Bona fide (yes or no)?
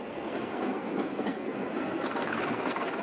no